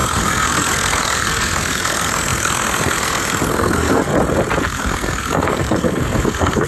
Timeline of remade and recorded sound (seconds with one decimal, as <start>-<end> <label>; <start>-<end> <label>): 0.0-4.1 remade; 4.1-4.6 recorded; 4.6-6.7 remade